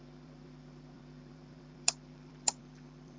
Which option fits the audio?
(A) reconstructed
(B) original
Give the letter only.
A